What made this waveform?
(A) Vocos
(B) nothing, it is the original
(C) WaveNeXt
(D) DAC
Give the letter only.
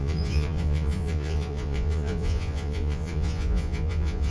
A